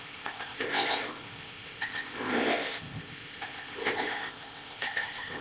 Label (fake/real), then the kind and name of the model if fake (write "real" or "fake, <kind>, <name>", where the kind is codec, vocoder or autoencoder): fake, codec, ZipCodec